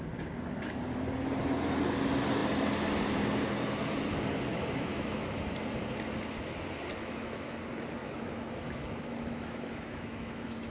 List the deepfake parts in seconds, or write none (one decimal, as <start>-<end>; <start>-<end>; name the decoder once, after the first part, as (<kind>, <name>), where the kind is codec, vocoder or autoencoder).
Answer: 4.5-5.3 (autoencoder, DAC-VAE); 7.0-7.6; 8.0-10.7